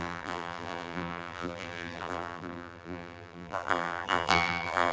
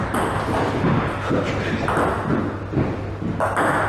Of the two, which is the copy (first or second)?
first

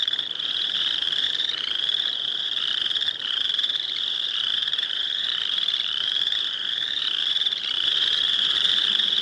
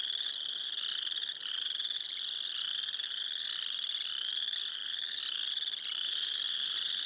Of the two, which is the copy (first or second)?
first